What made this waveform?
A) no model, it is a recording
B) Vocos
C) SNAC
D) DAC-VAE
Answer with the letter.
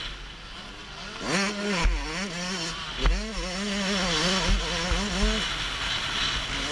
A